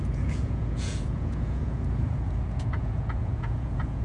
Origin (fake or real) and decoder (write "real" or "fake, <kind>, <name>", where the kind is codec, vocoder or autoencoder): fake, vocoder, Vocos